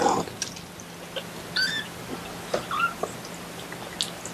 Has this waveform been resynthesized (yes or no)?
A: no